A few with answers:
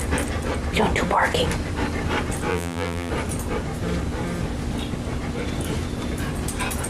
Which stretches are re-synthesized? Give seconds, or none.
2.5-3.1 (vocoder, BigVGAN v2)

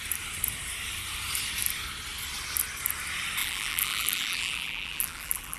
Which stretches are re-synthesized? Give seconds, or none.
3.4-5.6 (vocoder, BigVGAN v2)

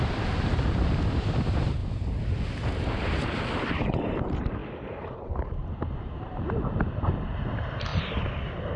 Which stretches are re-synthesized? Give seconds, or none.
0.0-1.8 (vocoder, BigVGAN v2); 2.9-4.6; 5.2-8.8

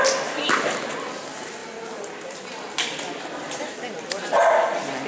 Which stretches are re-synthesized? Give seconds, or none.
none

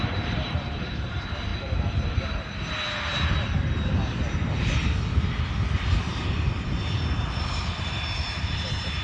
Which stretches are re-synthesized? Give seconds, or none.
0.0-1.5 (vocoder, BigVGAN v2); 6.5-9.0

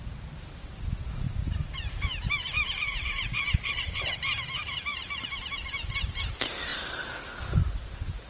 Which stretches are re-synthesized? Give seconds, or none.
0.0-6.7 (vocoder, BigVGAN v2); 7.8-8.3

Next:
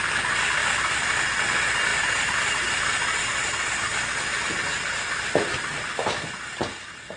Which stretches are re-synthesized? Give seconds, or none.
0.6-1.2 (vocoder, BigVGAN v2); 1.9-2.8; 3.3-3.9

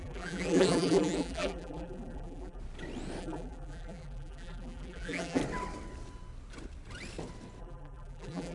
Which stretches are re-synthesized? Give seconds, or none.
0.0-2.6 (vocoder, BigVGAN v2); 3.2-5.4; 7.6-8.5